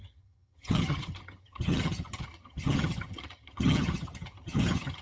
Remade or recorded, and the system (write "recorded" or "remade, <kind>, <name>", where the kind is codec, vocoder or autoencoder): remade, vocoder, HiFi-GAN